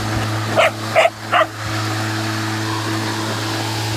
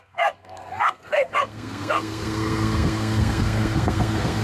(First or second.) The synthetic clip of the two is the second